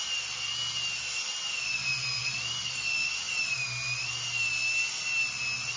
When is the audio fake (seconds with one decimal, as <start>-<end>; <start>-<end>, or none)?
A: 2.2-3.5